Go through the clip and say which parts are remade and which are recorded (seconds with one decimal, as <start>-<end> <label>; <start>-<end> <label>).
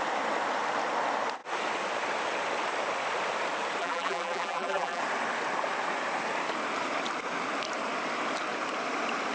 0.0-3.8 recorded; 3.8-5.0 remade; 5.0-9.3 recorded